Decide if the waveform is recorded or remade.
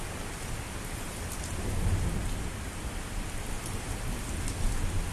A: recorded